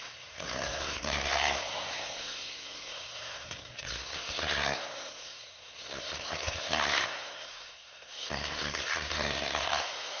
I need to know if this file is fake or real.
fake